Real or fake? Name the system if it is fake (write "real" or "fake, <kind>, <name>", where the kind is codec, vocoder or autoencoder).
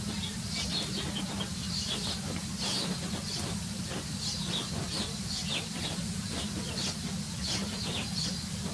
real